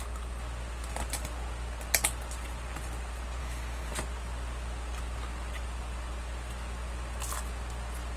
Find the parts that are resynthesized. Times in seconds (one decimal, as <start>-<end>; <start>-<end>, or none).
3.4-3.9